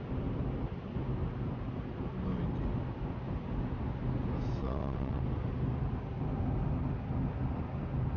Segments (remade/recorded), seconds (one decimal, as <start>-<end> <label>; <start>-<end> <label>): 0.0-4.6 recorded; 4.6-5.2 remade; 5.2-8.2 recorded